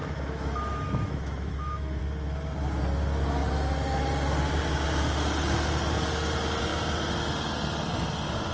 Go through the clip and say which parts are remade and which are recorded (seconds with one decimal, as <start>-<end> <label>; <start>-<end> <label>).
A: 0.0-2.0 remade; 2.0-8.5 recorded